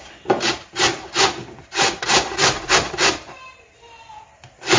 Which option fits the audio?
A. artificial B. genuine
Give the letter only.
B